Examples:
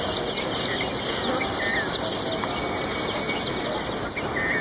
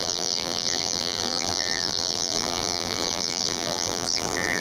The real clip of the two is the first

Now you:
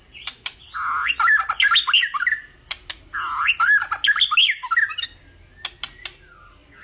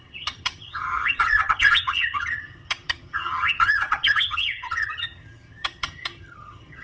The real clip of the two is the first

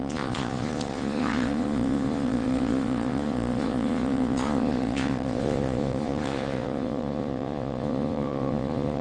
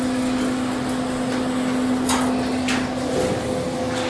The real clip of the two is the second